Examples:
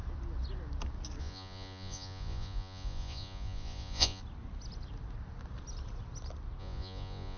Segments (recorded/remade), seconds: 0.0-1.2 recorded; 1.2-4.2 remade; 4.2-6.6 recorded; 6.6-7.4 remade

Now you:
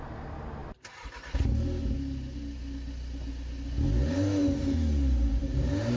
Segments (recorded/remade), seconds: 0.0-6.0 recorded

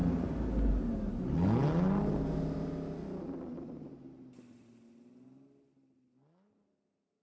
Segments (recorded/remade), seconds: 0.0-7.2 recorded